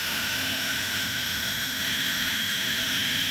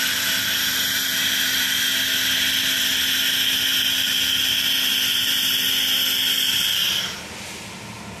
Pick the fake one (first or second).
first